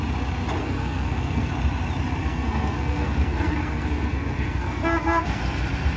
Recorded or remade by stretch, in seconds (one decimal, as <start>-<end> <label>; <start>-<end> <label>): 0.0-0.6 recorded; 0.6-1.5 remade; 1.5-2.2 recorded; 2.2-5.4 remade; 5.4-6.0 recorded